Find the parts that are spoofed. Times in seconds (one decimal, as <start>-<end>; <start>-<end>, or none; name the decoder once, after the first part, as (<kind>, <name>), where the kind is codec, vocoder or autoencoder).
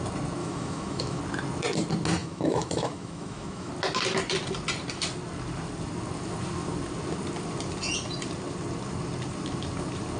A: 0.4-1.2 (autoencoder, DAC-VAE); 2.2-3.7